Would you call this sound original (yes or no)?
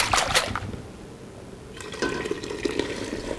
yes